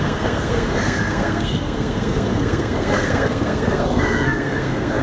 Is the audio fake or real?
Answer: fake